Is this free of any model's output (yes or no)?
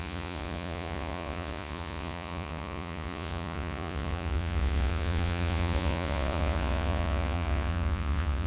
no